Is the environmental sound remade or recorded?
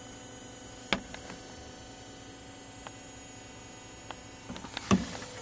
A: recorded